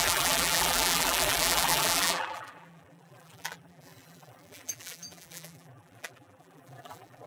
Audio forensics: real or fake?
fake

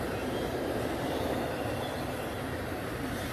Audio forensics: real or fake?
fake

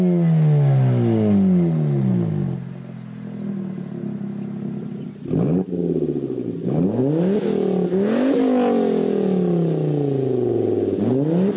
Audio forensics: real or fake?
real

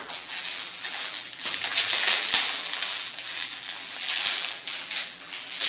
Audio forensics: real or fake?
fake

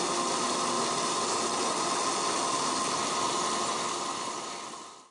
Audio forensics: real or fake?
real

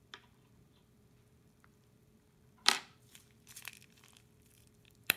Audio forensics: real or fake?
fake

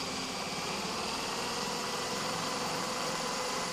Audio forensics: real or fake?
fake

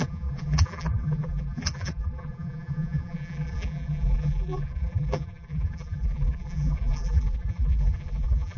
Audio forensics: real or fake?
fake